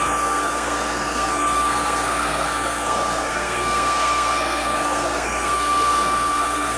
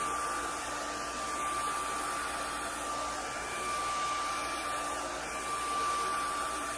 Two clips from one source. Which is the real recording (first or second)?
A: second